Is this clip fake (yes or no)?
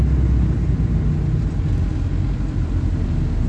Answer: no